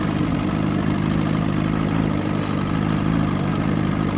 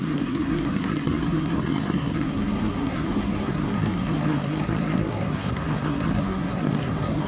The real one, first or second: first